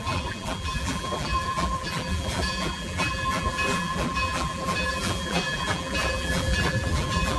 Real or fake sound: fake